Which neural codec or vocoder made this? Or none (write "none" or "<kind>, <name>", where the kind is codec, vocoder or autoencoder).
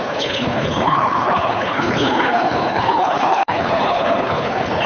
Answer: codec, HILCodec